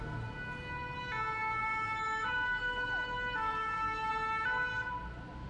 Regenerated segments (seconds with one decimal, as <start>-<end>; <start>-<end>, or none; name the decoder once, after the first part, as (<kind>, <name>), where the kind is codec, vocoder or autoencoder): 1.4-4.1 (autoencoder, DAC-VAE)